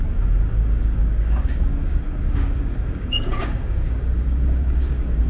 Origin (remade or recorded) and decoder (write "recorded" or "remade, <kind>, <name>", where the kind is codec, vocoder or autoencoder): remade, codec, DAC